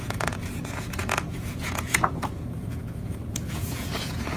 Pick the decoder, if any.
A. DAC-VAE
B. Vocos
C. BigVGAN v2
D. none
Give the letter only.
B